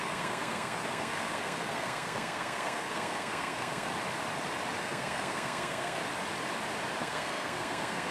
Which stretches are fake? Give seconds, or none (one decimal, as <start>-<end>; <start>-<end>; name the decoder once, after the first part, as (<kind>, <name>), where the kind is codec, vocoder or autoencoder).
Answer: 0.0-3.9 (codec, SNAC); 4.8-6.0; 7.0-8.1

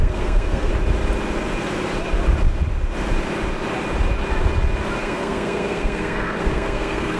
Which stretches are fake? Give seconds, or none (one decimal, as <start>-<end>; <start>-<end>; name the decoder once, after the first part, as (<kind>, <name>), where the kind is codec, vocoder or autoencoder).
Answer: 0.0-0.7 (codec, SNAC); 5.0-7.2

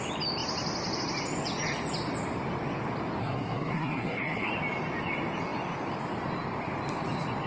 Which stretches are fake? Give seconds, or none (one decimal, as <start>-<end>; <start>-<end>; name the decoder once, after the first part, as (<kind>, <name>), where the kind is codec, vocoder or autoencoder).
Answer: 3.2-4.5 (codec, SNAC)